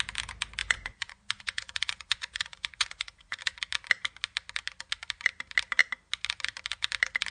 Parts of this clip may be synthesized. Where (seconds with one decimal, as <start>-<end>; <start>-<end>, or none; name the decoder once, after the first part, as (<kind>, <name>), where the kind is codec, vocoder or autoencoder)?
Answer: 0.6-3.4 (vocoder, Vocos)